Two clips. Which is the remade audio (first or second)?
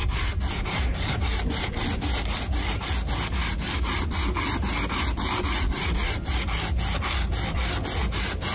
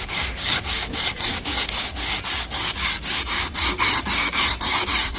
second